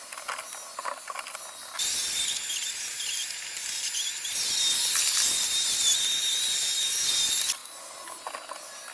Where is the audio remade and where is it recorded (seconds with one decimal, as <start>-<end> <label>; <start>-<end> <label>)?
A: 0.0-8.9 recorded

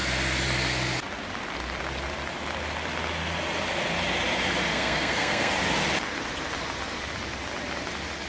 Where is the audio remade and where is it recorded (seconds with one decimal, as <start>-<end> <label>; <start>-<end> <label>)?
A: 0.0-4.7 recorded; 4.7-5.5 remade; 5.5-8.3 recorded

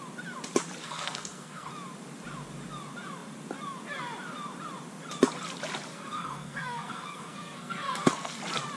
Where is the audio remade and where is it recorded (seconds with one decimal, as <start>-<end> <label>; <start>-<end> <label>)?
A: 0.0-0.8 recorded; 0.8-1.7 remade; 1.7-5.9 recorded; 5.9-8.4 remade; 8.4-8.8 recorded

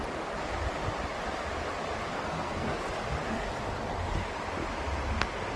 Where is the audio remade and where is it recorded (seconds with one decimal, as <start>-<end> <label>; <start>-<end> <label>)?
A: 0.0-2.1 recorded; 2.1-2.8 remade; 2.8-5.6 recorded

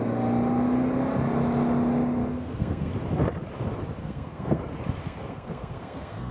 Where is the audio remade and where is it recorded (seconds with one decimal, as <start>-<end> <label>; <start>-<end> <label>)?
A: 0.0-2.2 recorded; 2.2-2.9 remade; 2.9-4.0 recorded; 4.0-4.6 remade; 4.6-5.0 recorded; 5.0-6.3 remade